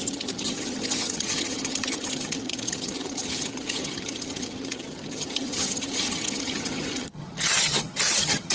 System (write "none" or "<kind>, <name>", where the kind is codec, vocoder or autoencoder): vocoder, HiFi-GAN